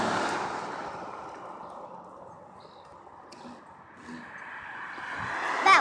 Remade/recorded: recorded